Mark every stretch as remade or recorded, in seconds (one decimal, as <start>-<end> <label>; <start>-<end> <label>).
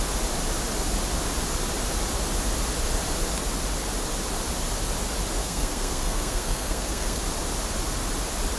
0.0-5.4 recorded; 5.4-7.2 remade; 7.2-8.6 recorded